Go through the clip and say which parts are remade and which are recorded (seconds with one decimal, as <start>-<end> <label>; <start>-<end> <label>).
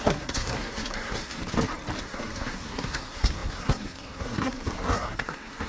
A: 0.0-1.4 remade; 1.4-2.0 recorded; 2.0-5.7 remade